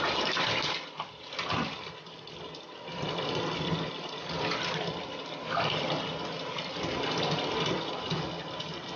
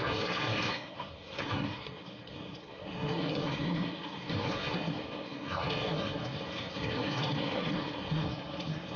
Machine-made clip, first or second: second